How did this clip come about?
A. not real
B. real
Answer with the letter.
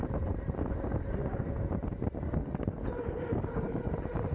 B